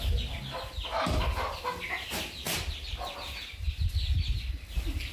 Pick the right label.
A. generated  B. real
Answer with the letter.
B